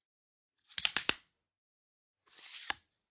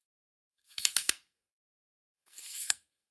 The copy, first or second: second